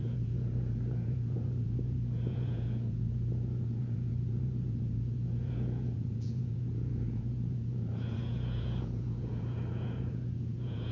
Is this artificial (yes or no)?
yes